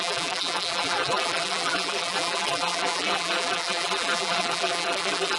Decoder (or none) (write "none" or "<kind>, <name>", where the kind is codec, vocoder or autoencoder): vocoder, BigVGAN v2